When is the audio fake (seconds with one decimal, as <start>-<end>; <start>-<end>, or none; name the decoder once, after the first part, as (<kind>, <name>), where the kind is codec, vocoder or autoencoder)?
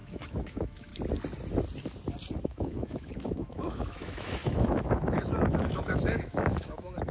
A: 0.0-0.9 (autoencoder, DAC-VAE); 2.4-7.1